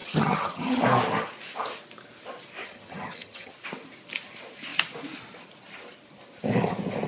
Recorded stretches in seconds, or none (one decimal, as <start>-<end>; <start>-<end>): 0.8-2.6; 3.5-7.1